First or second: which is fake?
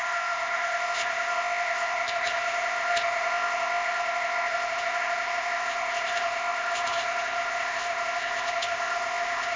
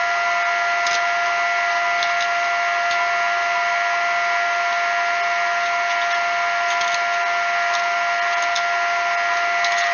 first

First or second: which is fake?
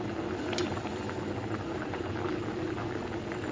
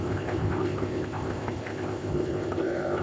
second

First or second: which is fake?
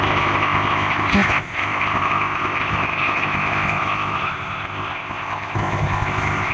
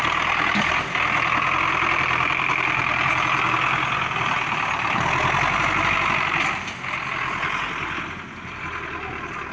first